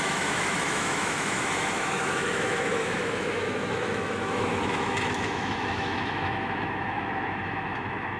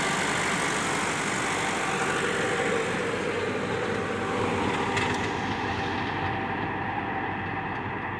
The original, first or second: second